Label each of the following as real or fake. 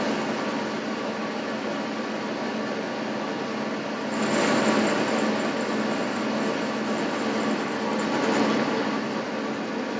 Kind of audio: real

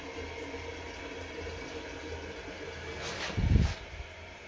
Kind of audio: real